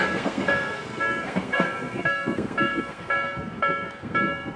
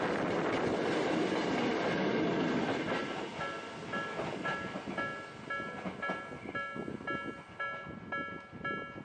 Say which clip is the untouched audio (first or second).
second